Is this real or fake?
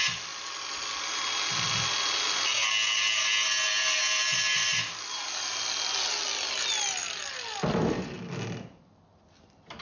real